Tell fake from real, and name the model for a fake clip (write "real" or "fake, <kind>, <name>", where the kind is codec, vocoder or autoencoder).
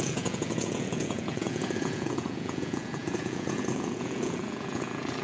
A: fake, vocoder, Vocos